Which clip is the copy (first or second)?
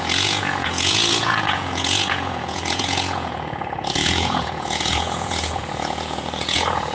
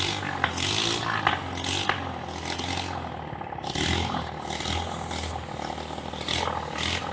first